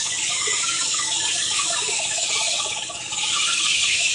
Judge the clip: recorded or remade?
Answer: remade